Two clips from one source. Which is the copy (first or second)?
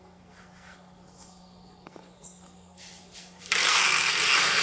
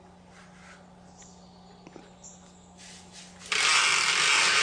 first